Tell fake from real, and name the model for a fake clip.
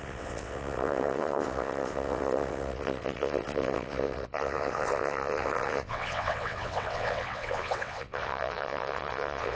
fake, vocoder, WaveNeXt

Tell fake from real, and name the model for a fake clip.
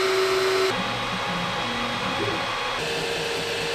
real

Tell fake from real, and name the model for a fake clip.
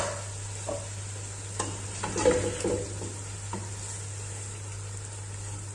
real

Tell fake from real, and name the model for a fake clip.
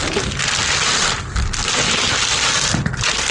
real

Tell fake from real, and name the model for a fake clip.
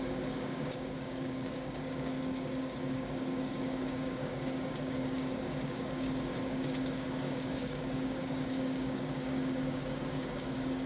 fake, codec, DAC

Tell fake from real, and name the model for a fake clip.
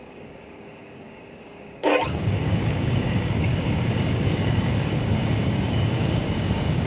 fake, codec, DAC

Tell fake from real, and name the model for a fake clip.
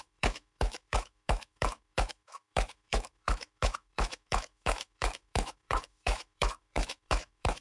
fake, autoencoder, DAC-VAE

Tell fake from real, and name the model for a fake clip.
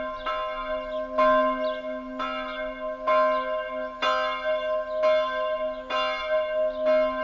real